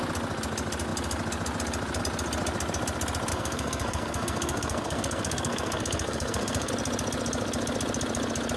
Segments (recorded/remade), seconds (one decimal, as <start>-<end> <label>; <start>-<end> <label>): 0.0-3.3 recorded; 3.3-6.7 remade; 6.7-8.6 recorded